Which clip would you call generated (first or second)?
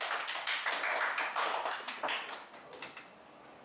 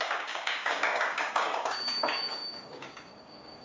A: second